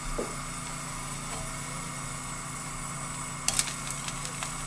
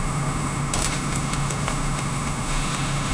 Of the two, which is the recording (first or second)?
first